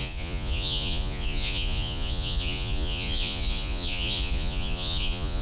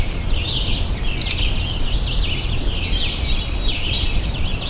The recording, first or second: second